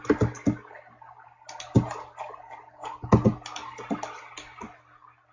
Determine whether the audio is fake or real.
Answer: real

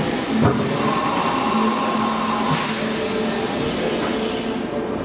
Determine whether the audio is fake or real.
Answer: real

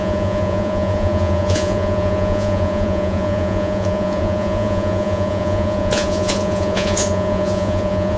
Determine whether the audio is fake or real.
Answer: fake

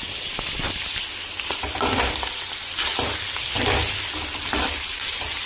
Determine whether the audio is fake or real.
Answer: real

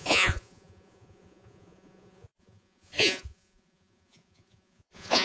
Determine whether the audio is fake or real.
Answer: fake